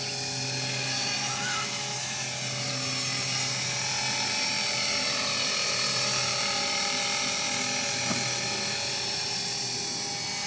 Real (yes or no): yes